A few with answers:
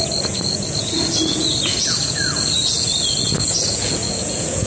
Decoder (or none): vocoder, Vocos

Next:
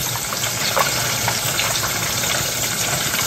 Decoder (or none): none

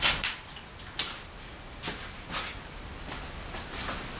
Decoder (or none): none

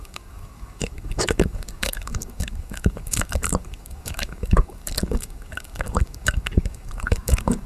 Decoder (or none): codec, DAC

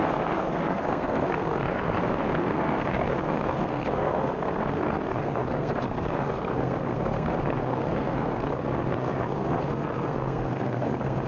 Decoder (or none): codec, SNAC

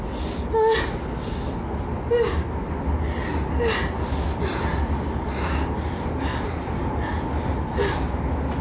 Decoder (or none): none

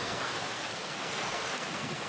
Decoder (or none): codec, SNAC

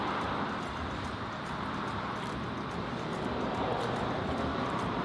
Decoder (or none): none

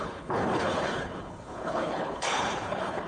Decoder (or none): codec, HILCodec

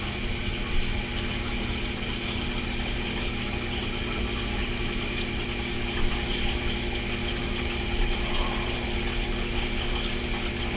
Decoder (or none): none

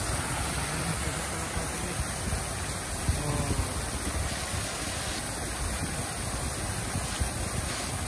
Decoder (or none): none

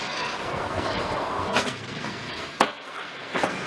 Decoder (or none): codec, SNAC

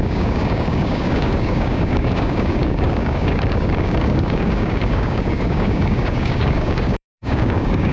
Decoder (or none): codec, DAC